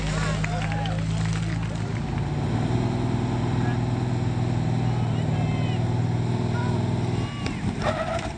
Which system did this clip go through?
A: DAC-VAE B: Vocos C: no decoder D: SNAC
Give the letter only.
C